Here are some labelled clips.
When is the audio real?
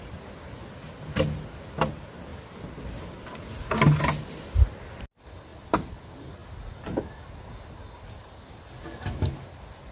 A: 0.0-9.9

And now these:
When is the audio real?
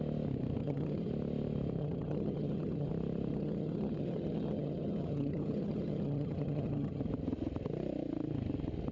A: 0.0-0.6; 1.1-1.8; 2.9-3.3; 7.0-8.9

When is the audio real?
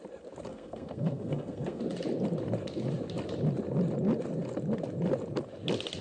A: 0.0-0.5; 1.8-6.0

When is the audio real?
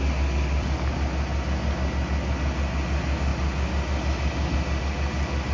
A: 0.0-5.5